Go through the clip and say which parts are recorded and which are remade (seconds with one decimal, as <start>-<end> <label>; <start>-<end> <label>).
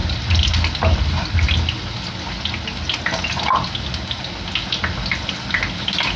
0.0-6.2 recorded